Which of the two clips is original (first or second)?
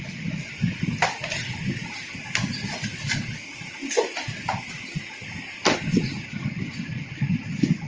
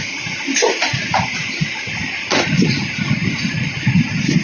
first